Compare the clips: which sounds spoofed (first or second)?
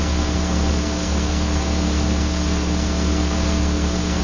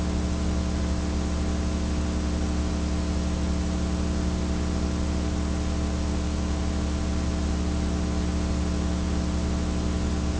first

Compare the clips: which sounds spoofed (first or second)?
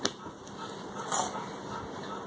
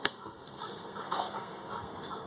second